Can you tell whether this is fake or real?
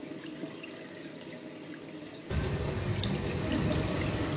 real